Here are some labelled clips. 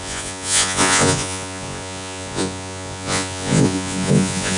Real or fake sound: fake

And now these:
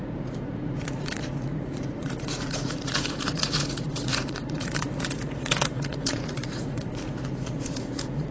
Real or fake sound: fake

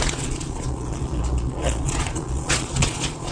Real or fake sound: fake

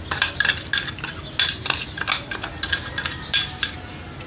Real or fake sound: real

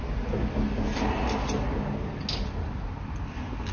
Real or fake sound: real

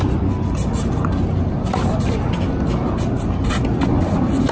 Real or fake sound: real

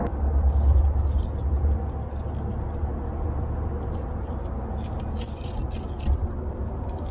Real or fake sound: real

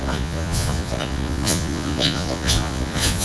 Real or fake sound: fake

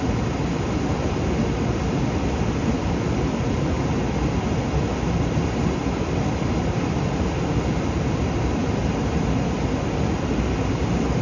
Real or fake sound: real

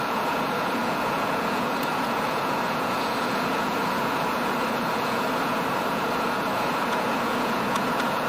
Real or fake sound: fake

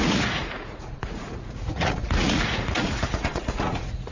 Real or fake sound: fake